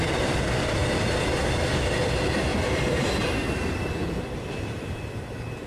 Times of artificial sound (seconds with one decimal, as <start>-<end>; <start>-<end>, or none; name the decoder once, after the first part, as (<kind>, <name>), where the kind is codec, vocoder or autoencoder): 2.5-3.2 (vocoder, BigVGAN v2); 4.0-5.0